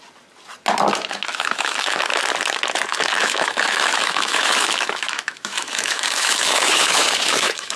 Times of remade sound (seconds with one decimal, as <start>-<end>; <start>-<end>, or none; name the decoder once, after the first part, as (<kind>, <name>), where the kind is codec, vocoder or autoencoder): 1.3-2.0 (autoencoder, DAC-VAE); 2.9-7.8